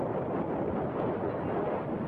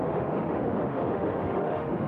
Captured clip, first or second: first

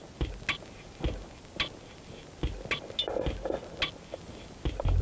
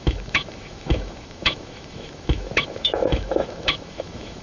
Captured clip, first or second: first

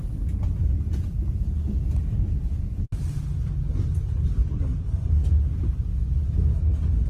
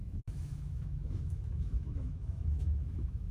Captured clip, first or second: first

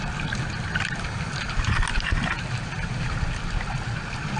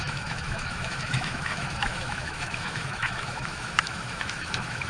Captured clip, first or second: first